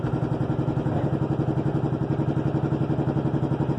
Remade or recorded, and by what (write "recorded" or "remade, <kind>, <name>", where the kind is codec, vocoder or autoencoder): recorded